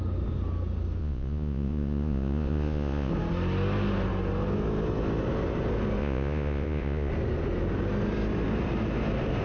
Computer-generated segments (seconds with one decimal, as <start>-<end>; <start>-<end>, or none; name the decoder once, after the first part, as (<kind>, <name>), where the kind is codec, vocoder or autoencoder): 1.0-3.1 (vocoder, Vocos); 6.0-7.1

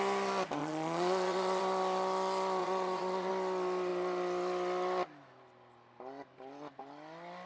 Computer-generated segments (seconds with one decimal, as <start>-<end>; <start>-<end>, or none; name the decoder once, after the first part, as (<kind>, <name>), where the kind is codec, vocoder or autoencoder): 0.6-1.6 (vocoder, Vocos); 2.6-3.3

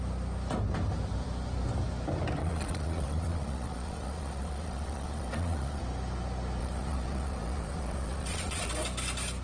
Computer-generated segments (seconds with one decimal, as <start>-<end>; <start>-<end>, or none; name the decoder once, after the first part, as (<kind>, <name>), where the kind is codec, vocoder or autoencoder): 2.4-5.8 (vocoder, Vocos); 6.6-8.7

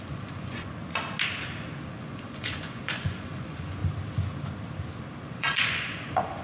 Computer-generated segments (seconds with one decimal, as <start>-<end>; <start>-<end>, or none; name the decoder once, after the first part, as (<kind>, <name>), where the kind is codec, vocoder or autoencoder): 0.0-0.8 (vocoder, Vocos); 1.9-3.8; 5.2-6.4

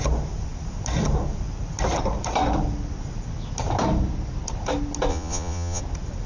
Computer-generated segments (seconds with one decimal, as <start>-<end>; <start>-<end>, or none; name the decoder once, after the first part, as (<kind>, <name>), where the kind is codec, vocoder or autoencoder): 5.1-5.8 (vocoder, Vocos)

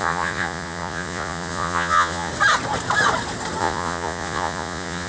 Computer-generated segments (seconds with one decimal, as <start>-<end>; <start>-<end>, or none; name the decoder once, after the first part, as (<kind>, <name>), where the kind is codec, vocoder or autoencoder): 0.0-2.3 (vocoder, Vocos); 3.6-5.1